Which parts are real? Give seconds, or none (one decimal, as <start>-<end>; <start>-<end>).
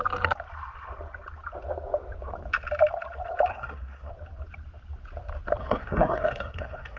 0.0-3.5; 4.1-5.6